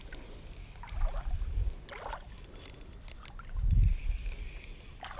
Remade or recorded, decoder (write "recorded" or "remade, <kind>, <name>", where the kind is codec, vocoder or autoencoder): recorded